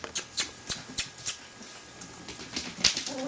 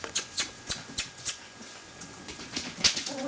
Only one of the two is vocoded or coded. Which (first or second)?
second